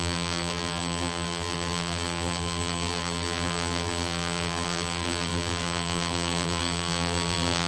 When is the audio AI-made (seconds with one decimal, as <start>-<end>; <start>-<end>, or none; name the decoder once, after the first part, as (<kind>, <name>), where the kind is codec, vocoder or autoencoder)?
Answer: 0.0-7.7 (vocoder, BigVGAN v2)